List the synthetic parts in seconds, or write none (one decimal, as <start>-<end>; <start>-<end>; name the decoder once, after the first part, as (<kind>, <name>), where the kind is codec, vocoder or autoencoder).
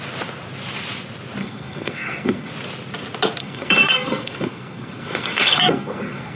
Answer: 1.4-2.5 (codec, SNAC); 3.4-6.4